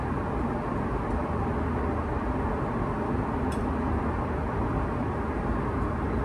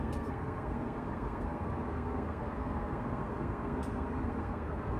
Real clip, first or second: first